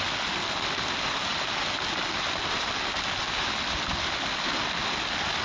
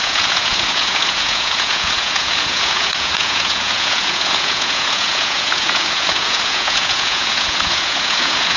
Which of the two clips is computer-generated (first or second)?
second